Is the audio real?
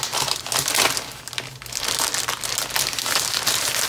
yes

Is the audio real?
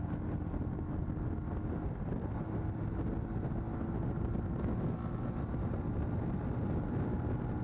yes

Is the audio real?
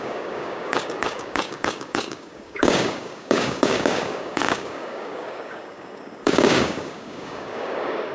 no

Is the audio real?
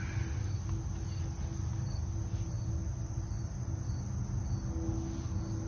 yes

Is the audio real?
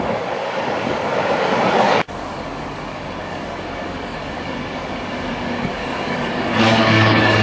no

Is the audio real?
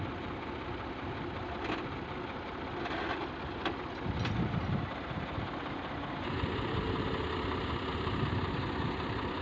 yes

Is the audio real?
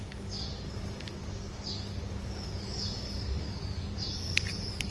no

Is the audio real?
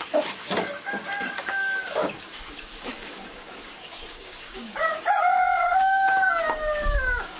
no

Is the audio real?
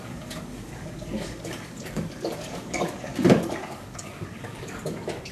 no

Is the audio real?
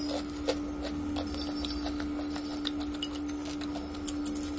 yes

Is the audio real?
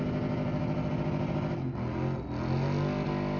yes